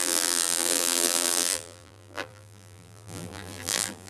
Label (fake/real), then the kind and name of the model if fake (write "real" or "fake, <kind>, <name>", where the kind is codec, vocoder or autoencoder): fake, vocoder, BigVGAN v2